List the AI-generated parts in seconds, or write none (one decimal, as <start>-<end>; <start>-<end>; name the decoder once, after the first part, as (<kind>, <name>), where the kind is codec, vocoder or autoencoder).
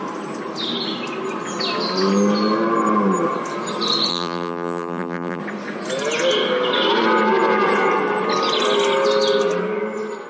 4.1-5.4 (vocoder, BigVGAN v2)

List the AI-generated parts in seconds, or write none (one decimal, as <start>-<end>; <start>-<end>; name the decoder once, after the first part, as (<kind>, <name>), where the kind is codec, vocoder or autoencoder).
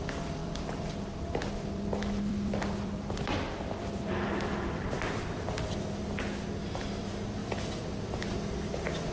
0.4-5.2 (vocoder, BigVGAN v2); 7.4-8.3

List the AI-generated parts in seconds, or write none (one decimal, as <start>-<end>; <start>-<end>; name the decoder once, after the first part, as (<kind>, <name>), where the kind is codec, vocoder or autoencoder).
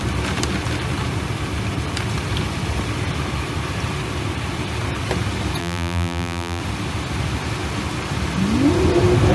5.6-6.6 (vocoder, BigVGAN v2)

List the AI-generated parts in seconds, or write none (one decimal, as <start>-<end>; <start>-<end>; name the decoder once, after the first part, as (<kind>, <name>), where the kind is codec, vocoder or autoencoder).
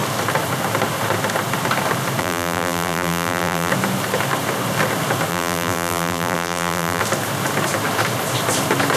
2.2-3.7 (vocoder, BigVGAN v2); 5.3-7.0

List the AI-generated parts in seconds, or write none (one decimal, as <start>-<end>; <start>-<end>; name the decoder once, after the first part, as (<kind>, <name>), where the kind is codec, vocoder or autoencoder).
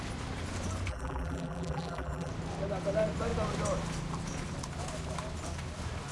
0.9-2.3 (vocoder, BigVGAN v2)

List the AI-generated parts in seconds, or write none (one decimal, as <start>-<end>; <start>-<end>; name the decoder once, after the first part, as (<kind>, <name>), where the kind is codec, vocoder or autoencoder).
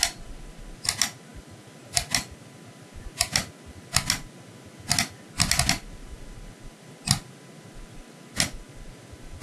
none